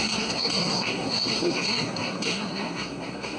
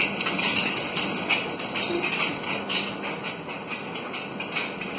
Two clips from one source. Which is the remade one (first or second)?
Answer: first